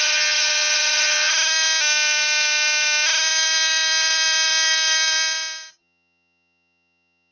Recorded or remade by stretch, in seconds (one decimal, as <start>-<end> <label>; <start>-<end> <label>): 0.0-1.3 remade; 1.3-5.7 recorded; 5.7-7.3 remade